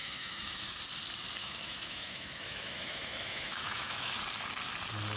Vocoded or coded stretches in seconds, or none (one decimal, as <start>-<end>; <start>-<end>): 0.0-0.8; 1.4-4.2

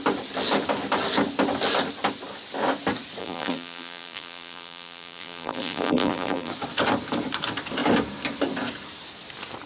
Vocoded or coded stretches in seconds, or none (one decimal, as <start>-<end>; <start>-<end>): 3.2-6.5

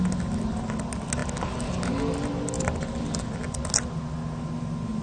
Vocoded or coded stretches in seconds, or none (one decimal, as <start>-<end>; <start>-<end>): none